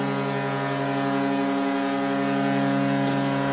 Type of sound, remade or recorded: recorded